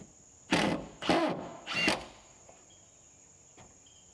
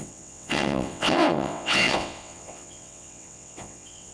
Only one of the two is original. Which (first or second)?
first